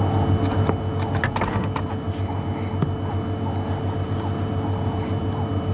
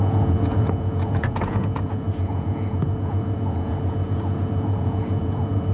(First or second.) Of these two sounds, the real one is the first